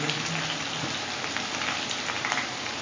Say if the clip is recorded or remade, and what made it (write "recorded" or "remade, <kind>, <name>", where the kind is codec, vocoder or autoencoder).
recorded